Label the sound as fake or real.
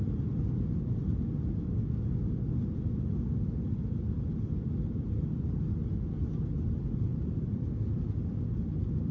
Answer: real